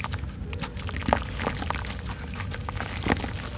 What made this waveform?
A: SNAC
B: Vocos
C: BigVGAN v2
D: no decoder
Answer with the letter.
D